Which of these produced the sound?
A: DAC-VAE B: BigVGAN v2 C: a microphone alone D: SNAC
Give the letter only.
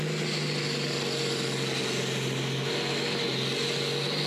C